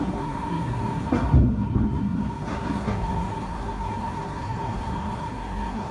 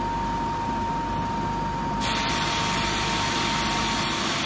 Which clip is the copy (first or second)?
first